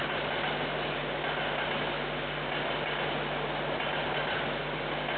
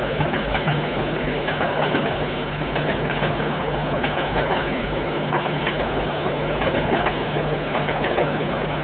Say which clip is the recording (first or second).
first